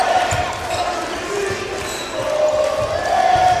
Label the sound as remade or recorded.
recorded